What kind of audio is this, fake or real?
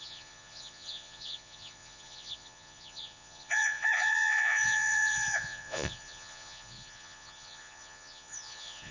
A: fake